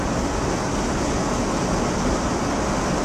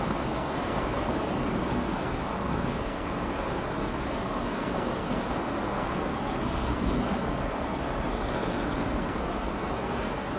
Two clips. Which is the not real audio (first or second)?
second